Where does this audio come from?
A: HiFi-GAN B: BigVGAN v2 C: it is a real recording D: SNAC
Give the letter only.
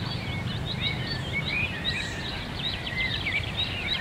B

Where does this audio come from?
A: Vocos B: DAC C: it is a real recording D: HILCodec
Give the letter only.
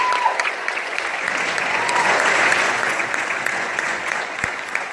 A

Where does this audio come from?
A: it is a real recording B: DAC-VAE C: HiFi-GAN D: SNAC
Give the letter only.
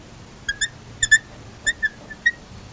A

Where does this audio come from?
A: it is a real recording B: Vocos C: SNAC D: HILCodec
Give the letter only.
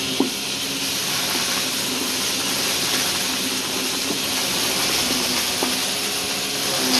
A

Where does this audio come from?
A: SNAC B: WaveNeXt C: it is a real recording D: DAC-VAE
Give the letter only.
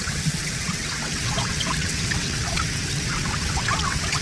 B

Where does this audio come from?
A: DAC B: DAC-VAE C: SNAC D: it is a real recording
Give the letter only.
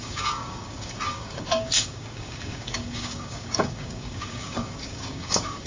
A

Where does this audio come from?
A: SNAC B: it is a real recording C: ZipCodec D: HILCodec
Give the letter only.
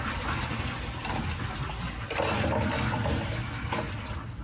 B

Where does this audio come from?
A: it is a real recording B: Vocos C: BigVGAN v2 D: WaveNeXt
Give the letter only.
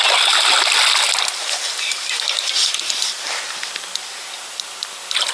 A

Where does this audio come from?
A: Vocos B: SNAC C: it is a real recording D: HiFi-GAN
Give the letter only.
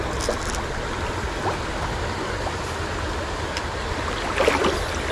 C